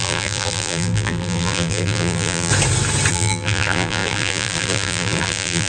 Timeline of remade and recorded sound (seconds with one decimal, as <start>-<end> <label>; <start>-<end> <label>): 0.0-2.5 remade; 2.5-3.1 recorded; 3.1-5.7 remade